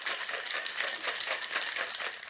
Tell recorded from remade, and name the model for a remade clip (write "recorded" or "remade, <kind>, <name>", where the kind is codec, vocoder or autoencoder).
recorded